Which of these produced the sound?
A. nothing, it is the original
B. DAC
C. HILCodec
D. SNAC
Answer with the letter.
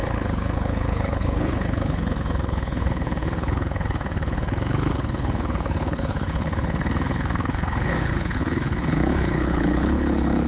C